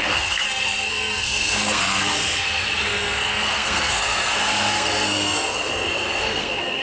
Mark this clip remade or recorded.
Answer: remade